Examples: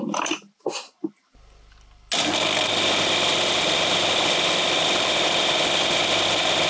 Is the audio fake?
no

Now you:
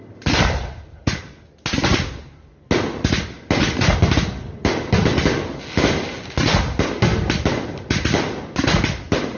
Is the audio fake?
no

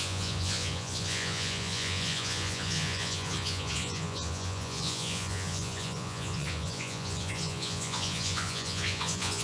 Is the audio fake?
yes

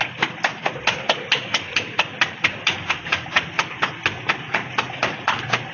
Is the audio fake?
no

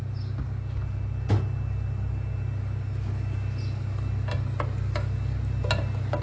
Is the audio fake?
no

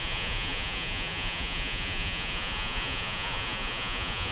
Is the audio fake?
yes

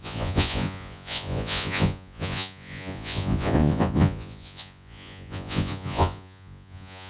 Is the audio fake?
yes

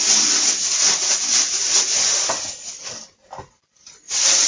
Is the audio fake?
no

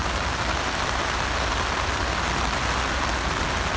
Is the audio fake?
no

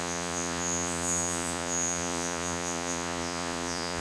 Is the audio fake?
yes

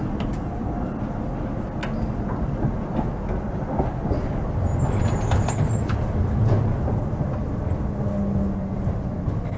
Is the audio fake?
no